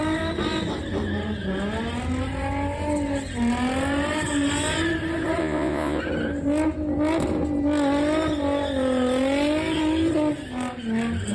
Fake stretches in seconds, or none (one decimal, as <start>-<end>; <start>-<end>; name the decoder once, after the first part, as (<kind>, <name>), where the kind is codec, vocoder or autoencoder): 5.4-6.0 (vocoder, Vocos)